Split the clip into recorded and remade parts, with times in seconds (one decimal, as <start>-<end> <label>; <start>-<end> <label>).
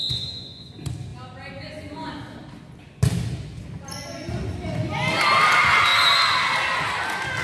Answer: 0.0-0.7 remade; 0.7-7.4 recorded